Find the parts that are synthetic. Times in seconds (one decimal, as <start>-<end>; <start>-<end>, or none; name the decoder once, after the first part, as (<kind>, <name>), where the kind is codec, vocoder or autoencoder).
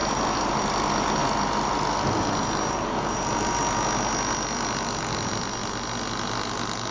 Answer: none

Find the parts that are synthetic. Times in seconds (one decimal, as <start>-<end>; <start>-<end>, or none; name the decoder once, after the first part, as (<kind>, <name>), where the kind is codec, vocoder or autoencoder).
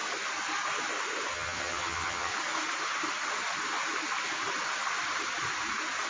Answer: 1.3-2.3 (vocoder, HiFi-GAN)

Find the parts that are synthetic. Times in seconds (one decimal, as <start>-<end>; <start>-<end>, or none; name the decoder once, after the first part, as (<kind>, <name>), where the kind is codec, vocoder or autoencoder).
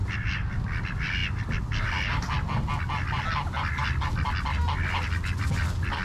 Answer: none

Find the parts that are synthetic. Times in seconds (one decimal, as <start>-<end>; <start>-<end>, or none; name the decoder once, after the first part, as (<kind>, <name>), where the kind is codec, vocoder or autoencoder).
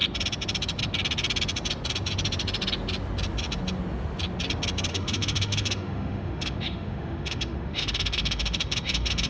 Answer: 4.9-9.3 (autoencoder, DAC-VAE)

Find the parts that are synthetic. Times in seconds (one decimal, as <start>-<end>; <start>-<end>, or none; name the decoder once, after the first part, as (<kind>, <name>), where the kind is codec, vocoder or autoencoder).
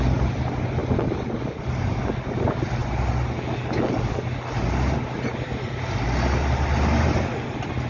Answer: none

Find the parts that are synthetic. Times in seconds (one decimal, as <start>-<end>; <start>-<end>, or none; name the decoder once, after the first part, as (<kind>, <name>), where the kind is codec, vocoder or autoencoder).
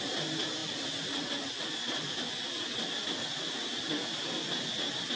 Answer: 0.6-2.3 (vocoder, BigVGAN v2)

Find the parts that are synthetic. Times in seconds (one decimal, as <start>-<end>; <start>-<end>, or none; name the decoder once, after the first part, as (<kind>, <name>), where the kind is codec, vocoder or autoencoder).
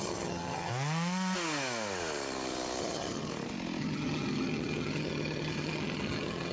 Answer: 0.0-0.7 (vocoder, HiFi-GAN); 2.8-3.3; 3.8-6.5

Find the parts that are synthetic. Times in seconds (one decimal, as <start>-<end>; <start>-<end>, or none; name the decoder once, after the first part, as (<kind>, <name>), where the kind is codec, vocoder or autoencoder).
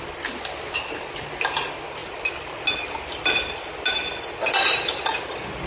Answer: none